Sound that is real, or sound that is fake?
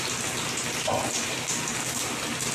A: real